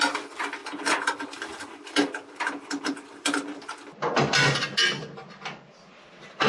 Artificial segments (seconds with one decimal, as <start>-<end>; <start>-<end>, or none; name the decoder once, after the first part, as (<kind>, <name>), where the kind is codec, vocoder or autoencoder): 0.6-3.9 (vocoder, BigVGAN v2)